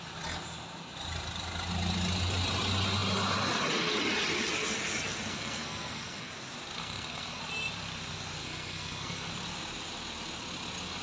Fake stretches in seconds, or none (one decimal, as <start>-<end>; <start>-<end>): 5.3-6.3; 6.8-7.4; 8.4-9.3